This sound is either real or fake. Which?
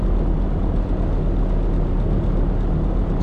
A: real